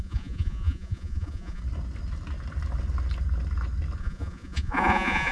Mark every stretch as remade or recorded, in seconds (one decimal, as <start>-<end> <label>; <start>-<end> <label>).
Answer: 0.0-1.6 remade; 1.6-4.0 recorded; 4.0-5.3 remade